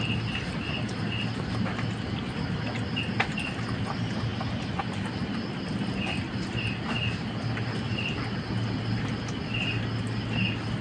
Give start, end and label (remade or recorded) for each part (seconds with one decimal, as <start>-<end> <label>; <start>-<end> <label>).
0.0-10.8 recorded